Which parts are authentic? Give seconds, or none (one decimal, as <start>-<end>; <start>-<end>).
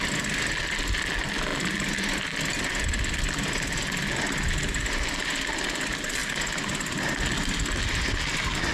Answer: 0.0-8.7